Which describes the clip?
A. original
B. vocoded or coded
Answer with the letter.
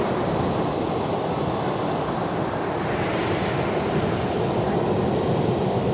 A